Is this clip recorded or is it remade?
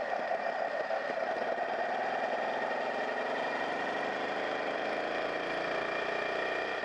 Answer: recorded